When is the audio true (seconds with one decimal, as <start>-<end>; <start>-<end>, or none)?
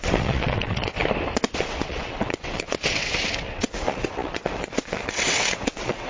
1.0-1.6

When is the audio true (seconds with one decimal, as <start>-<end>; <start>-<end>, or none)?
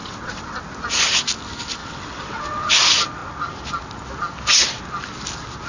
0.6-1.8; 2.7-5.7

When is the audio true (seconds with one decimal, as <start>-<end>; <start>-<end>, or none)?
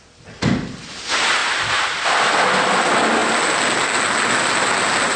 0.0-5.2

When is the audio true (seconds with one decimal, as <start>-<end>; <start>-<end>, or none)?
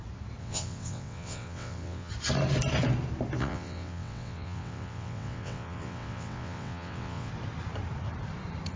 0.0-0.4; 2.1-3.4; 7.3-8.8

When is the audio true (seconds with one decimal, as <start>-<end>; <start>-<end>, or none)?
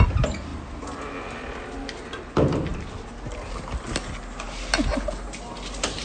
0.0-6.0